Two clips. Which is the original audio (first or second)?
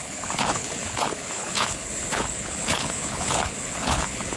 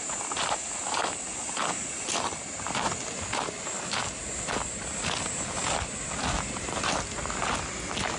second